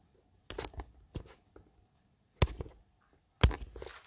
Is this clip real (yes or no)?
yes